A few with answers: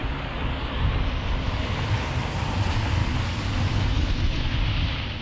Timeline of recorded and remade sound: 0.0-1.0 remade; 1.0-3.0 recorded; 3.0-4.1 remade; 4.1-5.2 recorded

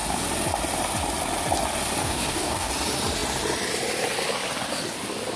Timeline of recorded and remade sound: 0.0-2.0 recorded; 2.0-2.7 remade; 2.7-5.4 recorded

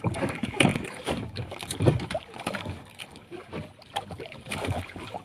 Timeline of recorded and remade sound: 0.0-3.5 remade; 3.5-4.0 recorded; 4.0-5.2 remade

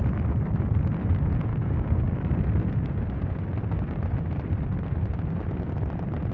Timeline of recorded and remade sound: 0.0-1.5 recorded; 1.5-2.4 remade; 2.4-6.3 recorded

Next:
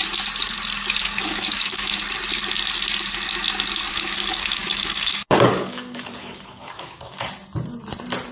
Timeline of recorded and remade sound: 0.0-1.0 recorded; 1.0-2.0 remade; 2.0-3.9 recorded; 3.9-7.3 remade; 7.3-8.3 recorded

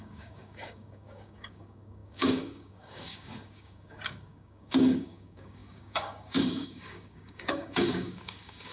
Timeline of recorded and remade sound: 0.0-8.7 remade

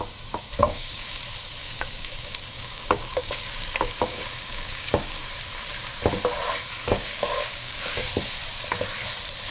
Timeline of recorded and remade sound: 0.0-0.6 recorded; 0.6-1.2 remade; 1.2-1.6 recorded; 1.6-5.3 remade; 5.3-6.8 recorded; 6.8-8.1 remade; 8.1-9.5 recorded